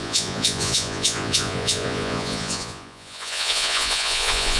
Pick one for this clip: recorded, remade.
remade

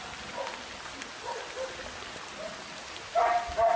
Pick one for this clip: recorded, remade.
recorded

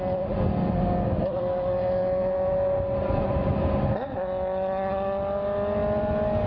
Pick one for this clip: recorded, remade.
recorded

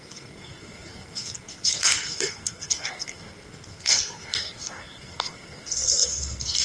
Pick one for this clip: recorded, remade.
remade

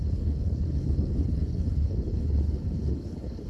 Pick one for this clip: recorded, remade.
remade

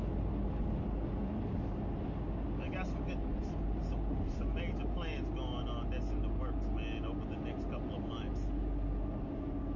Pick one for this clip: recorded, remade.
recorded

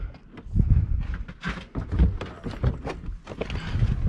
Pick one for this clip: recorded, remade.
recorded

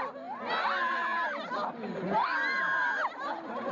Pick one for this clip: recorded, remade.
recorded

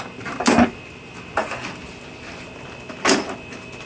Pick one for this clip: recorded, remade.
recorded